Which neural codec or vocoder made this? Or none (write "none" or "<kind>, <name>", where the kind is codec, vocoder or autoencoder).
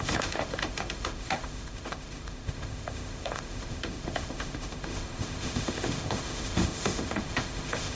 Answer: autoencoder, DAC-VAE